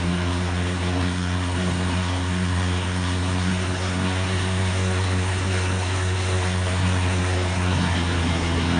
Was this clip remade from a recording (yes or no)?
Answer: yes